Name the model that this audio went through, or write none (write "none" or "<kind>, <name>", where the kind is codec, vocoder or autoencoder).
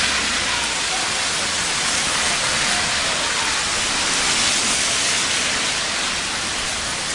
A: none